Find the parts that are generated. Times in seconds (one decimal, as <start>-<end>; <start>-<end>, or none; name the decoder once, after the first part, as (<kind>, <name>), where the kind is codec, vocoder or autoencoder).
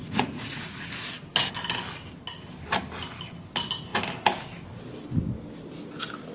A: 0.0-0.9 (vocoder, Vocos)